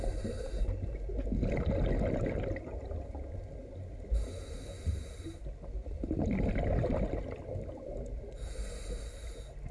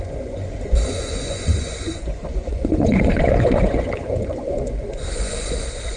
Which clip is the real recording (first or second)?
first